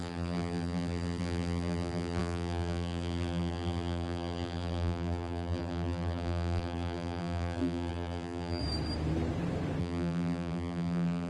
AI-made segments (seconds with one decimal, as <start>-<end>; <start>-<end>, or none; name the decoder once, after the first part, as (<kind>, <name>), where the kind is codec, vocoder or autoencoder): 0.0-8.6 (vocoder, BigVGAN v2); 9.8-11.3

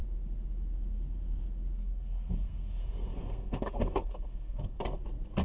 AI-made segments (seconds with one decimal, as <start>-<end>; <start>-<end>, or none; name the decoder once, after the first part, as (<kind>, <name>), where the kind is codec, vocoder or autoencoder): 1.8-5.0 (codec, SNAC)